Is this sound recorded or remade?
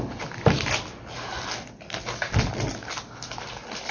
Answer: recorded